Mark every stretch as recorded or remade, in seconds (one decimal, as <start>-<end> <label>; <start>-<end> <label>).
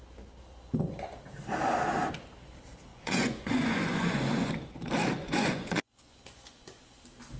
0.0-2.9 recorded; 2.9-4.5 remade; 4.5-5.2 recorded; 5.2-7.0 remade; 7.0-7.4 recorded